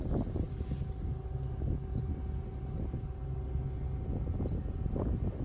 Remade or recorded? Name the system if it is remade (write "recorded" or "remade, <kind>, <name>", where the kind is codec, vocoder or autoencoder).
recorded